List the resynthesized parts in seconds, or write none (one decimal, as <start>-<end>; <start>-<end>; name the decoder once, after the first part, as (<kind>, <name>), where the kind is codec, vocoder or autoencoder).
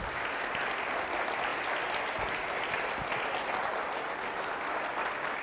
none